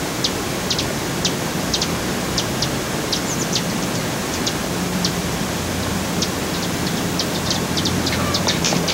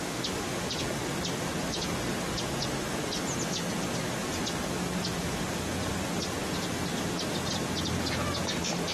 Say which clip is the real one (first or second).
second